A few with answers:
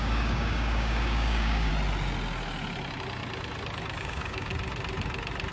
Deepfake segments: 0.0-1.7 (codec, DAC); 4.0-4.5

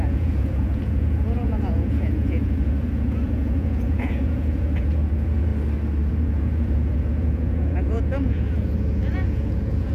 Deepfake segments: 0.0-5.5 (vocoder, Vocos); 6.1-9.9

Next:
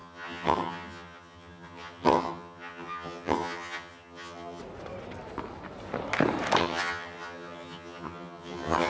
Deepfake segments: 0.0-4.6 (vocoder, HiFi-GAN); 6.6-8.9

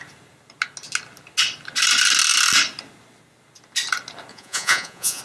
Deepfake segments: 4.3-5.2 (vocoder, Vocos)